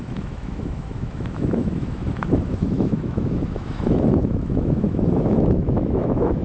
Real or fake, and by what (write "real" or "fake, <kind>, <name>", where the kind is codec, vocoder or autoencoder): fake, autoencoder, DAC-VAE